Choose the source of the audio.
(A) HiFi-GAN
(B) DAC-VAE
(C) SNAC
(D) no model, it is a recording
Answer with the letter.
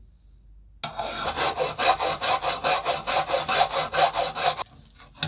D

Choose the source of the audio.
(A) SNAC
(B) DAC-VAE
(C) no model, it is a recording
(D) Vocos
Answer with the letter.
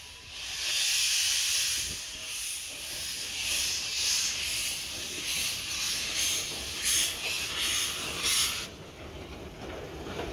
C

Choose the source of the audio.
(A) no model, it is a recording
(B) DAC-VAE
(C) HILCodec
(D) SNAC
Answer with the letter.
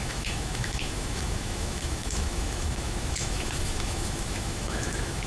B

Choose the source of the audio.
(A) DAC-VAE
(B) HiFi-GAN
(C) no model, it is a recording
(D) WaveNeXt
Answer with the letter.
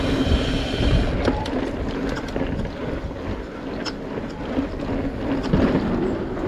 C